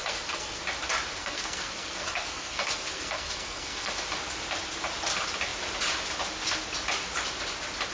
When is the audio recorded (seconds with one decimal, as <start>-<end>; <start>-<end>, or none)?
0.6-1.2; 3.9-7.9